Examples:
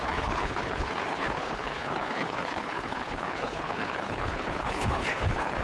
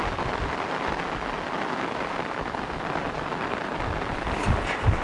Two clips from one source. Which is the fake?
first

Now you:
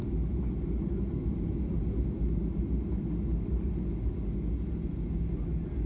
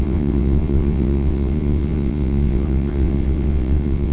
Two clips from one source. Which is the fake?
second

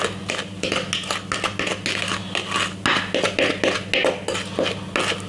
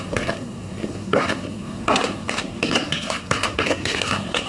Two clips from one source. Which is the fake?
second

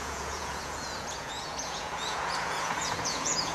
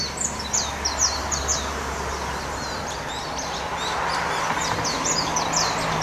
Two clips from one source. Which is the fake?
first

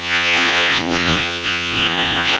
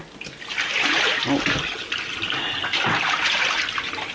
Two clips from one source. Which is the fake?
first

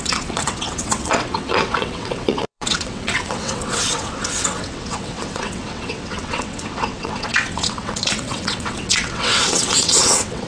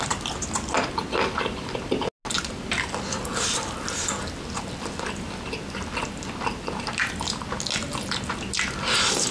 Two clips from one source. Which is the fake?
first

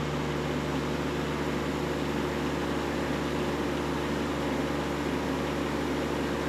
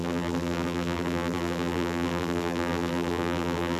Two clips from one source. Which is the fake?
second